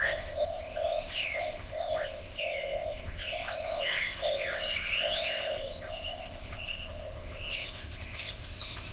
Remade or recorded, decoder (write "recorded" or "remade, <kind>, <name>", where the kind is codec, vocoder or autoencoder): remade, codec, ZipCodec